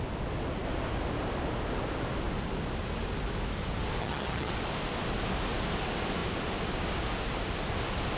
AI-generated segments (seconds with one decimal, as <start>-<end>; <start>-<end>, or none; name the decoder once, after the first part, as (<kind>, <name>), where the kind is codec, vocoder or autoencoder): 4.0-4.5 (vocoder, HiFi-GAN)